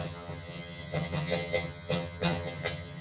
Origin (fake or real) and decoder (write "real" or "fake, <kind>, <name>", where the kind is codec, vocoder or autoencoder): fake, vocoder, HiFi-GAN